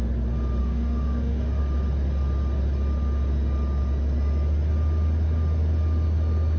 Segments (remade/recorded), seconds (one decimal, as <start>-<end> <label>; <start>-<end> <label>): 0.0-0.6 recorded; 0.6-1.6 remade; 1.6-6.6 recorded